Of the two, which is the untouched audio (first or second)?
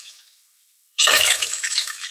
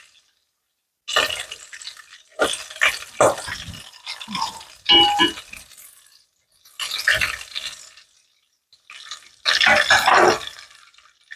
second